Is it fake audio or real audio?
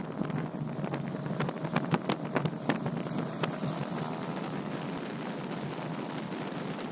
real